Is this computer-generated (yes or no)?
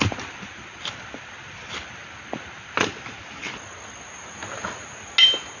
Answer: no